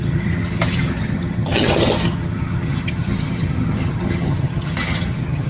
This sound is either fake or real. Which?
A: fake